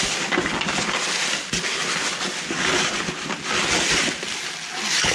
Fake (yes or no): no